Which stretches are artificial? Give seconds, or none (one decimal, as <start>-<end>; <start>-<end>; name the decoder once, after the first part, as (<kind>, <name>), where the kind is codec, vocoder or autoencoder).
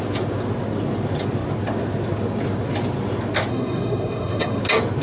3.5-4.6 (codec, SNAC)